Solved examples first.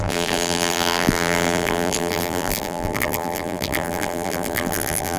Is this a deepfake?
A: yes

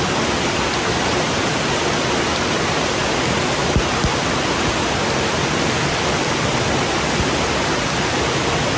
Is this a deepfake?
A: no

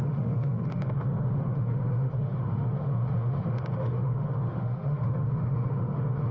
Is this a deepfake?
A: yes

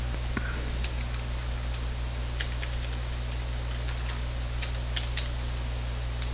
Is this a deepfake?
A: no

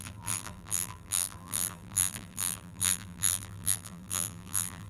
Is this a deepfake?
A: yes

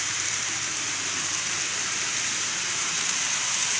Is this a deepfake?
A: yes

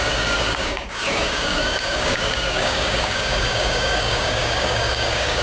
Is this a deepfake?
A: yes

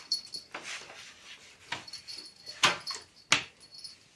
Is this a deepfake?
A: no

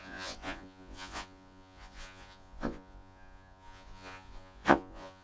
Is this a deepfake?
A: yes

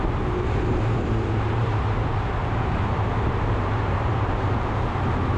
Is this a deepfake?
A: yes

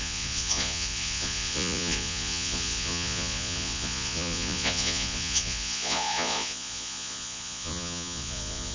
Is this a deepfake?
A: yes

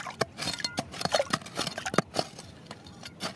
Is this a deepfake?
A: no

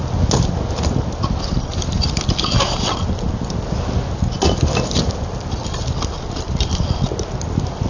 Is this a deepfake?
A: no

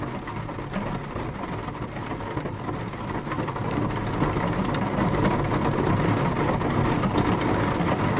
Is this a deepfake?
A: no